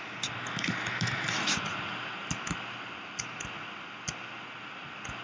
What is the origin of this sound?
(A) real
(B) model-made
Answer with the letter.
A